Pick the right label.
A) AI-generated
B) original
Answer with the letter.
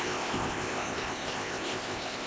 A